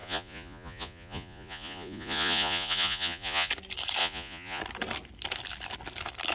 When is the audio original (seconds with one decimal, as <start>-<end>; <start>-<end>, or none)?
3.5-4.0; 4.6-6.3